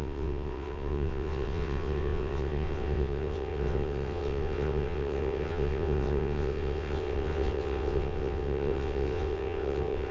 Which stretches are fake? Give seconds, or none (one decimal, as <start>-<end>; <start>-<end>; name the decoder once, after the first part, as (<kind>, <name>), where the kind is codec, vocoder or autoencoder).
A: 0.0-10.1 (vocoder, WaveNeXt)